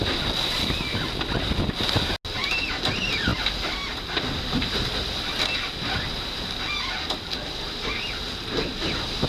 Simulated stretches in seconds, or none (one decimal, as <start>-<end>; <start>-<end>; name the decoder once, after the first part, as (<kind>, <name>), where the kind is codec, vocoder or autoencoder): none